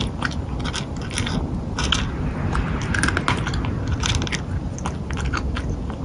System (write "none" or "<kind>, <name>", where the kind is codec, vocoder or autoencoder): none